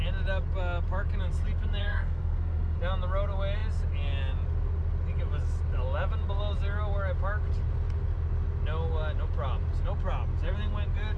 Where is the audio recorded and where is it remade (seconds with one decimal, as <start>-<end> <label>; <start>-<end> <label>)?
0.0-1.8 recorded; 1.8-2.8 remade; 2.8-11.2 recorded